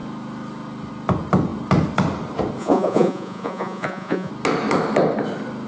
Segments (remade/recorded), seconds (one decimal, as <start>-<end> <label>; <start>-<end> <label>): 0.0-2.6 recorded; 2.6-4.3 remade; 4.3-5.7 recorded

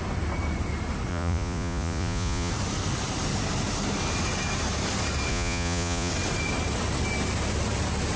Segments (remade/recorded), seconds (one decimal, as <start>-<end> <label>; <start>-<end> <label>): 0.0-1.1 recorded; 1.1-2.5 remade; 2.5-5.3 recorded; 5.3-6.1 remade; 6.1-8.2 recorded

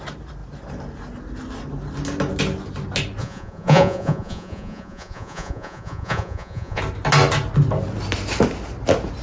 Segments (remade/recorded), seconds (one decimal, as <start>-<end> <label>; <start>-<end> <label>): 0.0-3.2 recorded; 3.2-6.8 remade; 6.8-9.2 recorded